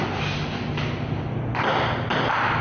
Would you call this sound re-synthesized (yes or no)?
no